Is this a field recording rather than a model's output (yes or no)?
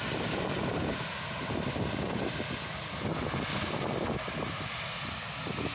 yes